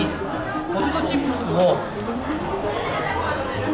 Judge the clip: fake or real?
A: real